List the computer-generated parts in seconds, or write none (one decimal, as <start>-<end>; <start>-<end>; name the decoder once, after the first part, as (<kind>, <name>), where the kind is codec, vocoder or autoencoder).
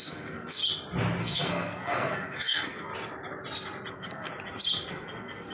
0.0-0.6 (codec, SNAC); 1.2-2.9; 3.9-4.3; 4.9-5.5